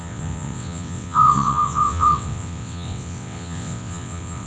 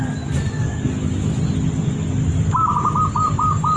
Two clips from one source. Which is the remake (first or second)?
first